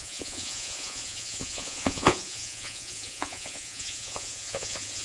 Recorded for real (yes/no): no